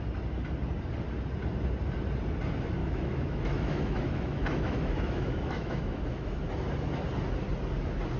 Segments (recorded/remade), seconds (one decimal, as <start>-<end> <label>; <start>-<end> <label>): 0.0-2.8 recorded; 2.8-6.4 remade; 6.4-8.2 recorded